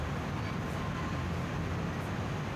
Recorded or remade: recorded